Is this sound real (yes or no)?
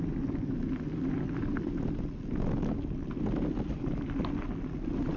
yes